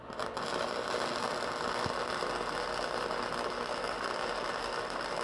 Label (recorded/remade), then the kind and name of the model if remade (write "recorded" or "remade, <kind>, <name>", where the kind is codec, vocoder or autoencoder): recorded